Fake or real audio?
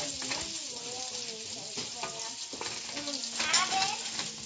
real